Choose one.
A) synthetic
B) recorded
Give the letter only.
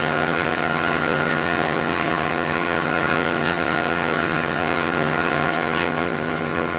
A